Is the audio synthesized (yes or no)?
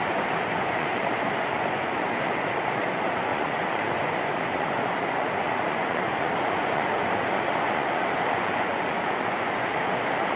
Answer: yes